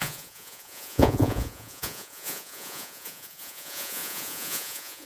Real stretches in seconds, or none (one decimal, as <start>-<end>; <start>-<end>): none